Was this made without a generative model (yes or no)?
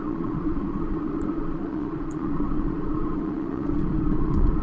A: no